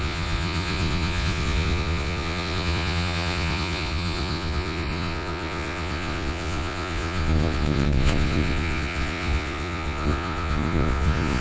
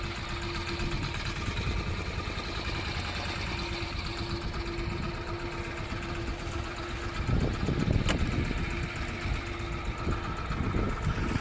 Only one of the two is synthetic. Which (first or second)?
first